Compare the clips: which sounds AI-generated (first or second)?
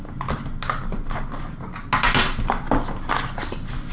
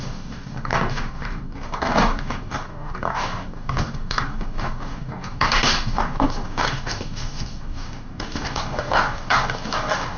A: second